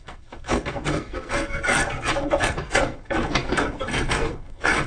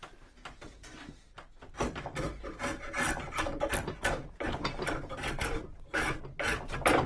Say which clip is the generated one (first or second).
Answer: first